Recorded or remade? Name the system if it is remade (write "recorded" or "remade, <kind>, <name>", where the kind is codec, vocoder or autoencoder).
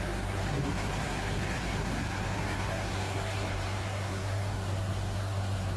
remade, codec, SNAC